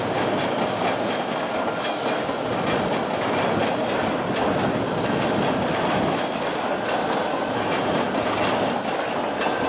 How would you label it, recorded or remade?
recorded